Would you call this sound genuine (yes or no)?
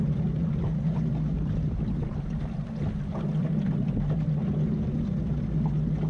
yes